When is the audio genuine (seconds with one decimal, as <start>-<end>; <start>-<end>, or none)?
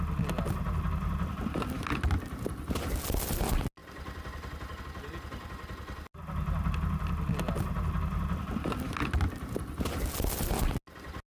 0.0-11.4